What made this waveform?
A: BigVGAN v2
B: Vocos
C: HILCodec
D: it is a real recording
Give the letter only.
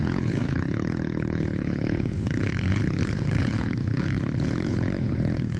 C